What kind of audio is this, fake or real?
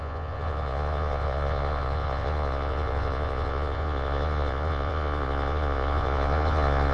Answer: fake